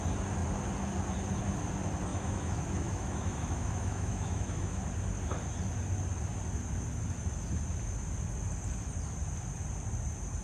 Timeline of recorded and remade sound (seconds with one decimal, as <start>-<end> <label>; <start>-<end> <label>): 0.0-2.1 recorded; 2.1-4.8 remade; 4.8-10.4 recorded